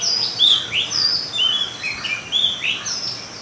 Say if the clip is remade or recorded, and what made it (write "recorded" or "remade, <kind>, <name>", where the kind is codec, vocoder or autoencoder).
recorded